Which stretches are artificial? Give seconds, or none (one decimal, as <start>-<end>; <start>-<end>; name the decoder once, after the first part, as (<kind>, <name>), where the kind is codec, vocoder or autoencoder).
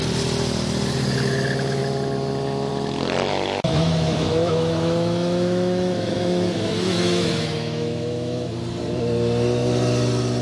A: 3.3-8.5 (autoencoder, DAC-VAE)